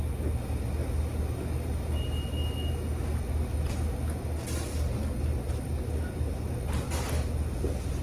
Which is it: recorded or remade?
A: recorded